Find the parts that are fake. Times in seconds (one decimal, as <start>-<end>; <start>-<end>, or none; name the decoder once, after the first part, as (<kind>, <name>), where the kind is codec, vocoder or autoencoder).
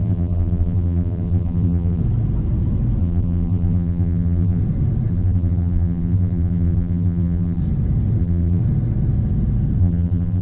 0.0-2.0 (vocoder, BigVGAN v2); 3.0-4.6; 5.1-7.6; 8.2-8.6; 9.8-10.4